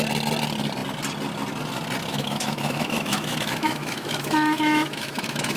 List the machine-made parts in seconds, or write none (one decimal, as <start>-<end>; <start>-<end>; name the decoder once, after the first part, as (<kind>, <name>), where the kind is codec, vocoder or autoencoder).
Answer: 2.1-5.6 (autoencoder, DAC-VAE)